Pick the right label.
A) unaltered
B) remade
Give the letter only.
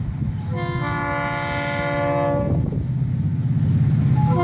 A